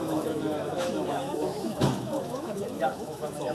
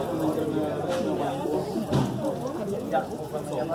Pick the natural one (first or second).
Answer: second